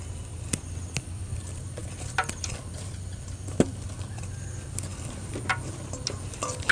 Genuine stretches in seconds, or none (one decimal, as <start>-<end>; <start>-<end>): 0.0-6.7